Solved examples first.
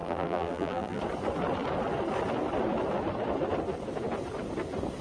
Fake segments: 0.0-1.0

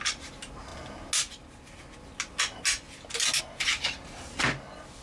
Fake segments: none

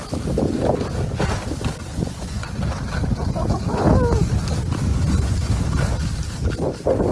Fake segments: 1.9-2.6; 4.9-5.5

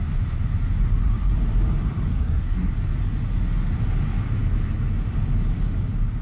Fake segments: 2.1-2.7

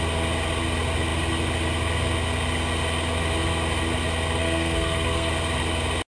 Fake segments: 4.4-5.3

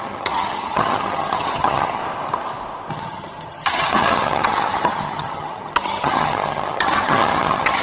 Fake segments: 0.0-2.0; 2.9-7.8

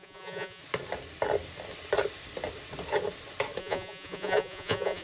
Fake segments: 0.0-0.6; 3.6-5.0